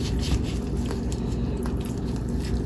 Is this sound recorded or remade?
recorded